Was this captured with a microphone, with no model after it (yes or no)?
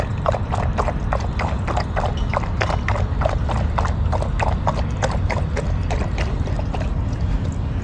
yes